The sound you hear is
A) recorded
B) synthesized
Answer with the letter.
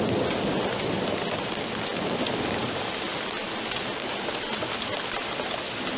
A